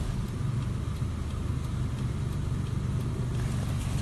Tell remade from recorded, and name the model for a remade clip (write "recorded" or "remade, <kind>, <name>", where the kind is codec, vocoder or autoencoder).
recorded